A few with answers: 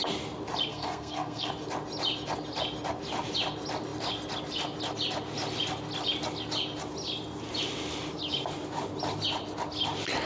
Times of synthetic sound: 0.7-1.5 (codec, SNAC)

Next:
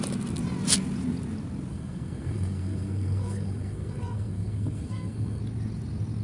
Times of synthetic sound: 1.7-5.4 (codec, SNAC)